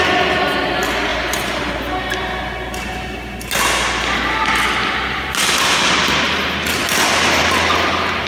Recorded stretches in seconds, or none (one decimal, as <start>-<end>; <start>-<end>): 0.0-1.1; 1.7-8.3